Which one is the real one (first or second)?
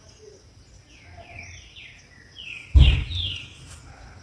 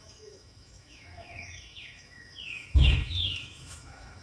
first